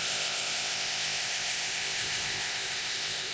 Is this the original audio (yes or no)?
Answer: no